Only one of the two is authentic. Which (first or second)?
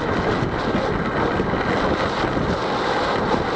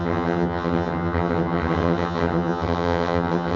first